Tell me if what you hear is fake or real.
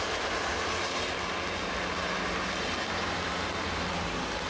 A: real